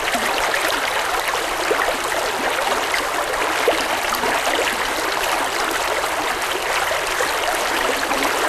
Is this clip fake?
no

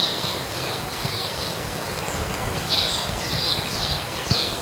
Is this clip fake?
yes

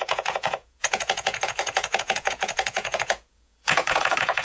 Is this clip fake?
yes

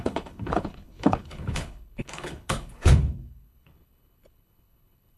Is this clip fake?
yes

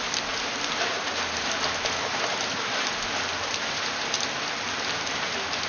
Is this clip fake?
no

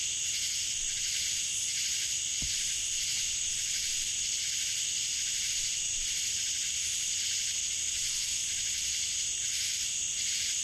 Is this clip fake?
no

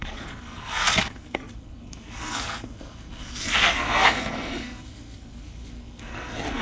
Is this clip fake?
yes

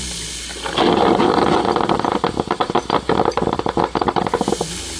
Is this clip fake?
no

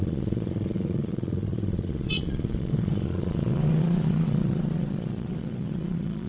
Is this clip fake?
yes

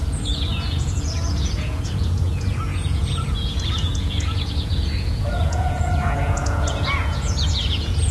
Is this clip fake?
yes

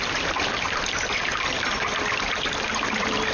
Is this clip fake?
no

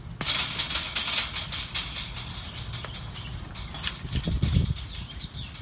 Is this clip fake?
no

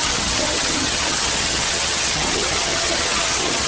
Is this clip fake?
yes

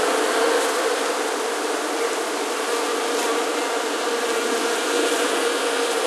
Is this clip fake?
no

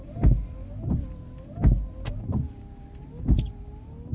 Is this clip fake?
no